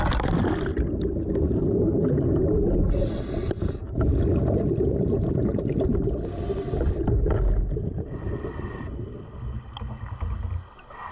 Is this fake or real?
real